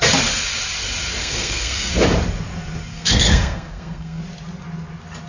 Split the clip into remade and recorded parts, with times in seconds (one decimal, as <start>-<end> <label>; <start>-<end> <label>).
0.0-1.2 recorded; 1.2-1.9 remade; 1.9-2.9 recorded; 2.9-4.2 remade; 4.2-5.3 recorded